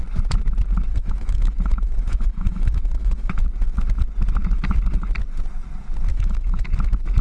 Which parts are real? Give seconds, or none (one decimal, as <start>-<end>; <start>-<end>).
0.0-0.9; 3.4-6.1; 6.7-7.2